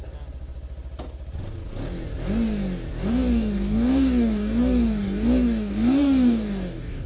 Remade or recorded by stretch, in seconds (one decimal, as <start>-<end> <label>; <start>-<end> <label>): 0.0-3.1 recorded; 3.1-7.1 remade